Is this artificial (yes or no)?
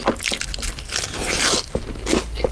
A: no